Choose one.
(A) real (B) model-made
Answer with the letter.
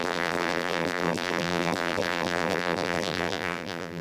B